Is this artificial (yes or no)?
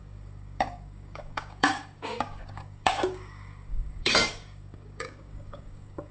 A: yes